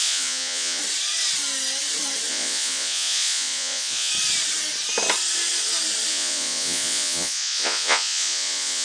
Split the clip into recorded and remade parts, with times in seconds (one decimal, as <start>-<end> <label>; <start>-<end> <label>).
0.0-0.8 remade; 0.8-2.3 recorded; 2.3-4.1 remade; 4.1-6.1 recorded; 6.1-8.8 remade

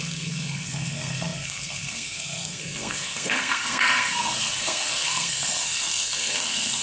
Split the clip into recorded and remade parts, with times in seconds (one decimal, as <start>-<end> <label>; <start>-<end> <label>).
0.0-6.8 remade

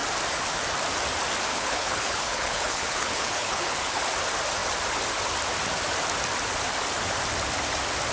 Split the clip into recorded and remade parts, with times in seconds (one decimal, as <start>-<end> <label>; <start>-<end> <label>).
0.0-1.5 recorded; 1.5-4.0 remade; 4.0-8.1 recorded

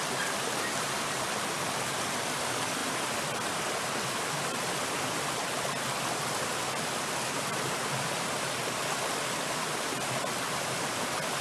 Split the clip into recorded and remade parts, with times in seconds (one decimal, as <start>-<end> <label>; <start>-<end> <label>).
0.0-11.4 recorded

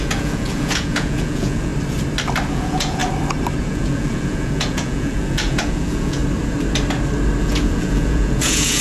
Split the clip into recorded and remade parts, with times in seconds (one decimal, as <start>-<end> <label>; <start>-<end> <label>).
0.0-1.7 remade; 1.7-2.5 recorded; 2.5-3.0 remade; 3.0-3.6 recorded; 3.6-6.2 remade; 6.2-7.4 recorded; 7.4-8.8 remade